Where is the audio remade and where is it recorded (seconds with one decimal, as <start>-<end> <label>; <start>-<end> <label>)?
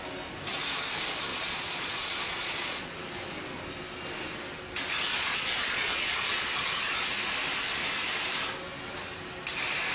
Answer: 0.0-1.3 recorded; 1.3-2.9 remade; 2.9-5.1 recorded; 5.1-6.7 remade; 6.7-9.9 recorded